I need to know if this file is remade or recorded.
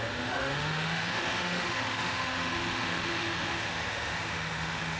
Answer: remade